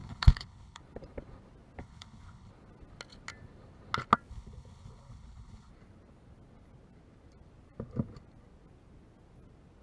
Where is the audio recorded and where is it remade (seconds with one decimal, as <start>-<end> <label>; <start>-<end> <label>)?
0.0-0.8 remade; 0.8-1.8 recorded; 1.8-2.5 remade; 2.5-4.3 recorded; 4.3-5.7 remade; 5.7-9.8 recorded